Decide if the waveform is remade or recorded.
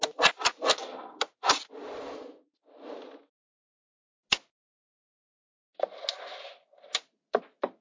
recorded